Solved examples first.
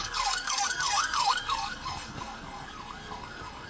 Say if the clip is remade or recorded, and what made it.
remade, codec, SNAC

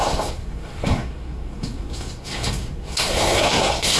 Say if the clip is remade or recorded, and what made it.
remade, codec, SNAC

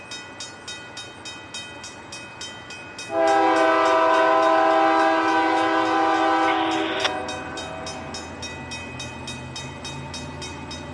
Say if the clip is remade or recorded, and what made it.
recorded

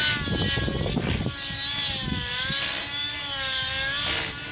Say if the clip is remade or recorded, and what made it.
recorded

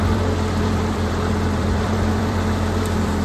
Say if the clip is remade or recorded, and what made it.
remade, vocoder, BigVGAN v2